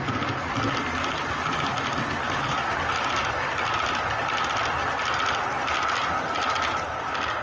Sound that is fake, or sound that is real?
real